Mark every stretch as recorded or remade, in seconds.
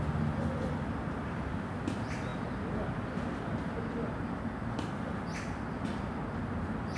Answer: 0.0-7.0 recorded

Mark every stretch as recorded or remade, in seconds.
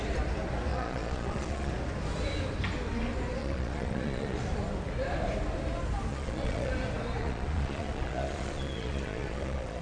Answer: 0.0-0.7 recorded; 0.7-1.7 remade; 1.7-3.4 recorded; 3.4-4.4 remade; 4.4-6.1 recorded; 6.1-6.7 remade; 6.7-7.2 recorded; 7.2-9.8 remade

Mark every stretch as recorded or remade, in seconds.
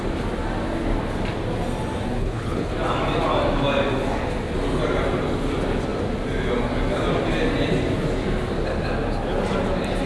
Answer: 0.0-2.2 recorded; 2.2-2.7 remade; 2.7-10.1 recorded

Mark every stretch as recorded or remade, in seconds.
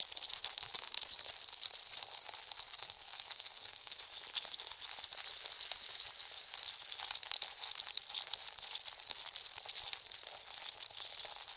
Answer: 0.0-2.8 recorded; 2.8-4.0 remade; 4.0-11.6 recorded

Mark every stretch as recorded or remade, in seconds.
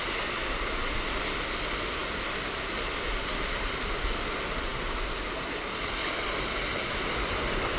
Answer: 0.0-7.8 recorded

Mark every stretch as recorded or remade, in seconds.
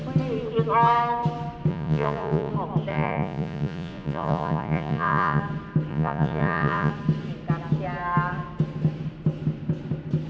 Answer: 0.0-1.7 recorded; 1.7-2.5 remade; 2.5-2.9 recorded; 2.9-5.4 remade; 5.4-5.9 recorded; 5.9-6.9 remade; 6.9-10.3 recorded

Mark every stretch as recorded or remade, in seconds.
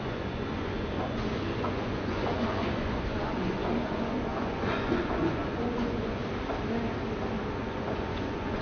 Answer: 0.0-6.2 remade; 6.2-7.5 recorded; 7.5-8.6 remade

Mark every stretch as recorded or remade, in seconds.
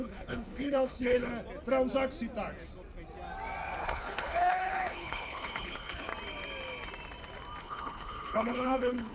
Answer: 0.0-1.3 remade; 1.3-3.8 recorded; 3.8-6.1 remade; 6.1-7.6 recorded; 7.6-9.1 remade